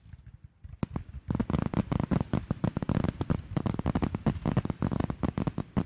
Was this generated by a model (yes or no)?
no